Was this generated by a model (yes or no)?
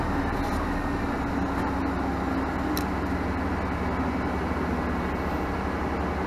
no